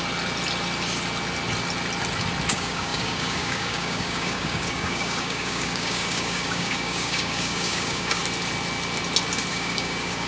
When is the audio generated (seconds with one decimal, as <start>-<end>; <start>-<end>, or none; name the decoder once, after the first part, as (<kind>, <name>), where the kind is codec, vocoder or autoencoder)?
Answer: 2.5-8.2 (codec, DAC); 9.5-10.3